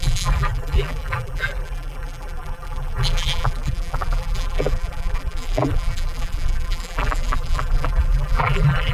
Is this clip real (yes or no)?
no